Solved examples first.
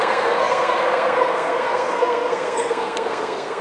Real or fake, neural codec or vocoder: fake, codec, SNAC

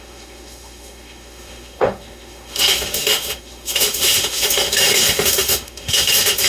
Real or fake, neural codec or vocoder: fake, autoencoder, DAC-VAE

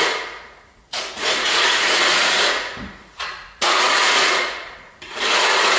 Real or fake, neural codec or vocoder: fake, vocoder, Vocos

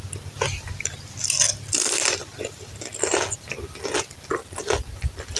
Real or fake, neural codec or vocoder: real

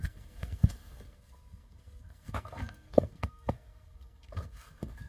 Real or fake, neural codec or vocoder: fake, codec, SNAC